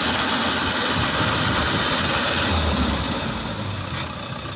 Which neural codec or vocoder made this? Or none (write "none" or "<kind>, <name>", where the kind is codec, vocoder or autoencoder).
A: none